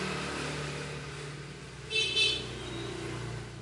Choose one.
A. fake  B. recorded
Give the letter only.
B